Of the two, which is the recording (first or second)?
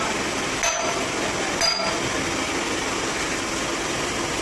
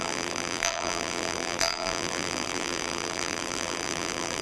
first